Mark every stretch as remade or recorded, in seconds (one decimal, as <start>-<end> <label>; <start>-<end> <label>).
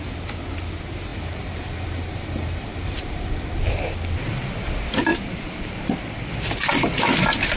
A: 0.0-1.1 recorded; 1.1-3.6 remade; 3.6-7.6 recorded